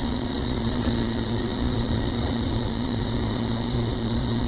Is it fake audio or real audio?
fake